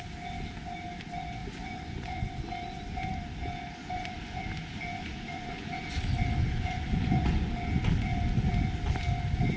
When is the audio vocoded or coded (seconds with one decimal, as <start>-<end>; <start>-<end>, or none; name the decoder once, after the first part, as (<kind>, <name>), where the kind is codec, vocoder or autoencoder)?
1.4-2.2 (vocoder, Vocos); 3.8-4.4; 5.0-5.7; 6.4-7.5